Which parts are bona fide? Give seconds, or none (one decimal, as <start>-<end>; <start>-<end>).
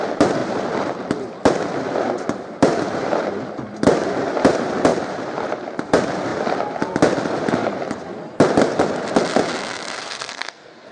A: 0.0-10.0